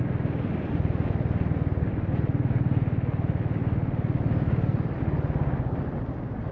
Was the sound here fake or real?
real